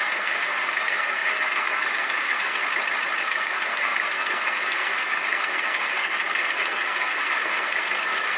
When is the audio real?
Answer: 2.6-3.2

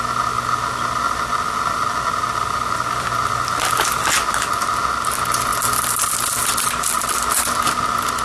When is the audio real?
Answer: 0.0-8.2

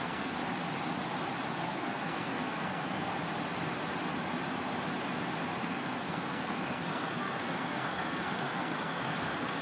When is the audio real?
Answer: 0.4-1.5; 3.1-5.6

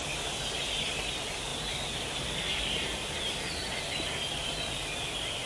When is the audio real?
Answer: 0.0-5.5